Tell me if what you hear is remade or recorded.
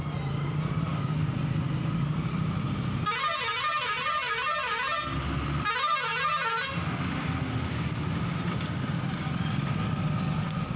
recorded